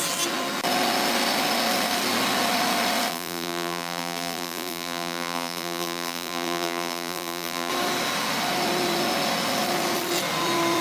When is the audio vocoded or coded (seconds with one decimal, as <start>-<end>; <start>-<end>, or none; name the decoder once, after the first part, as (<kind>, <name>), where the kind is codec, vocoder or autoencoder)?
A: 3.1-7.7 (vocoder, BigVGAN v2)